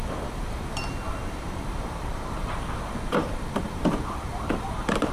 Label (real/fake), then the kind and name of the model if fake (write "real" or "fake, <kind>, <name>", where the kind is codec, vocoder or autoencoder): fake, vocoder, BigVGAN v2